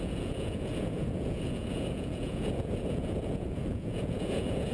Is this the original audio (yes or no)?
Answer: no